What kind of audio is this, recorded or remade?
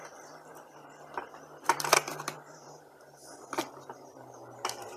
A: remade